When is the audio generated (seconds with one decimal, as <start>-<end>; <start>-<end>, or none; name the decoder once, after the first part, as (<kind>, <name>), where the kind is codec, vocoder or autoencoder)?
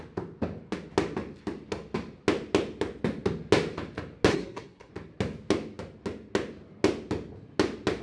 4.3-4.9 (codec, SNAC)